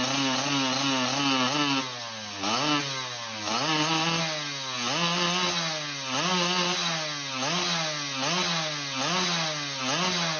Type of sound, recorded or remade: recorded